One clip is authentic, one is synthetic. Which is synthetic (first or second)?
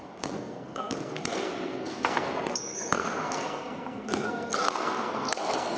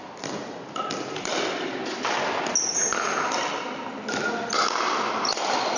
first